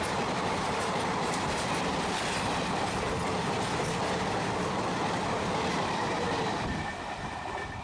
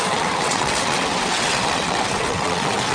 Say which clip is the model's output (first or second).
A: second